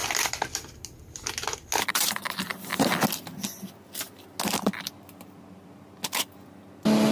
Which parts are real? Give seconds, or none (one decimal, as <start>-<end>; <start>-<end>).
0.0-1.9; 2.7-7.1